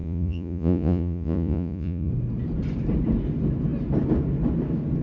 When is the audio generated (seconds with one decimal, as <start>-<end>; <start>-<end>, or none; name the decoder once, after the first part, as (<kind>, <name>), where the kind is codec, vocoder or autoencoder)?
0.0-2.1 (vocoder, Vocos)

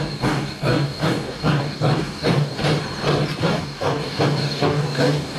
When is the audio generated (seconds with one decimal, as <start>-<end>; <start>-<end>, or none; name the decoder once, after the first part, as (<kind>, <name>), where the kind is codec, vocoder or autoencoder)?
0.0-2.6 (codec, DAC); 3.4-5.4